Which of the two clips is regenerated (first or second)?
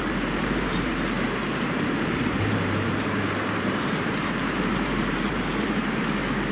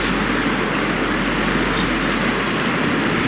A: first